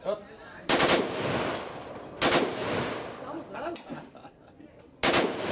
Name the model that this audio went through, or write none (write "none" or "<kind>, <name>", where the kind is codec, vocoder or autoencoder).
none